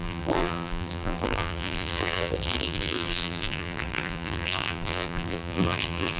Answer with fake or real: fake